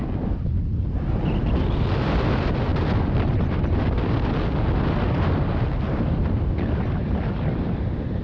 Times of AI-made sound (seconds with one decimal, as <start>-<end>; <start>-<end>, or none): none